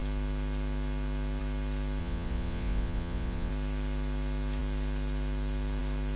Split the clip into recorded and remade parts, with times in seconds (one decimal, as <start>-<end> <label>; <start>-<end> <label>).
0.0-2.0 recorded; 2.0-3.5 remade; 3.5-6.2 recorded

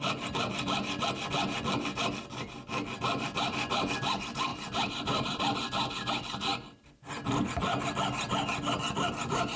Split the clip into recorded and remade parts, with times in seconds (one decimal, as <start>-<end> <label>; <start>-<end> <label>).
0.0-4.5 recorded; 4.5-5.4 remade; 5.4-9.6 recorded

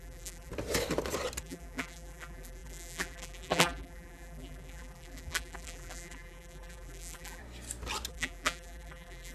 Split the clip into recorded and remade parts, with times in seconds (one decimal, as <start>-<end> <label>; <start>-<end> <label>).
0.0-0.5 remade; 0.5-1.4 recorded; 1.4-7.4 remade; 7.4-8.1 recorded; 8.1-9.3 remade

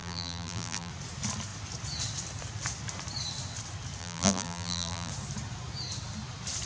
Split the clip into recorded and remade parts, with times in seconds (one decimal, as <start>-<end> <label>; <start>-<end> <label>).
0.0-0.9 remade; 0.9-4.0 recorded; 4.0-5.1 remade; 5.1-6.7 recorded

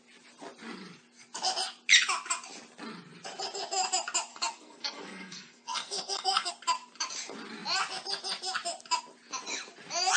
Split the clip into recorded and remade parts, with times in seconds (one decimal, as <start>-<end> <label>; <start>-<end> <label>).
0.0-4.3 recorded; 4.3-6.5 remade; 6.5-10.2 recorded

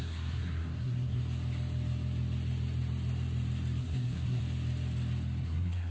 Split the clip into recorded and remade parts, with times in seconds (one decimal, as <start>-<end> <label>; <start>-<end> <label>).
0.0-1.2 remade; 1.2-3.8 recorded; 3.8-4.4 remade; 4.4-5.4 recorded; 5.4-5.9 remade

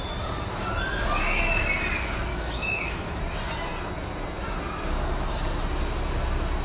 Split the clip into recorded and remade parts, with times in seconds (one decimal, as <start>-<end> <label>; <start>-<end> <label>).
0.0-2.3 recorded; 2.3-3.2 remade; 3.2-6.6 recorded

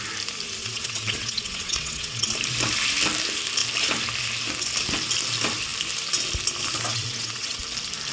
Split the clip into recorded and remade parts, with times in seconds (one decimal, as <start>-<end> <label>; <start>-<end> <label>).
0.0-0.6 recorded; 0.6-2.3 remade; 2.3-6.9 recorded; 6.9-7.6 remade; 7.6-8.1 recorded